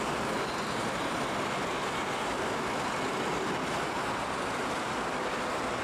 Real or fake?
real